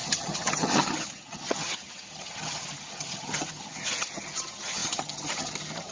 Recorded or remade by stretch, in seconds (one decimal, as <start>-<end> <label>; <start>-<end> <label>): 0.0-5.9 remade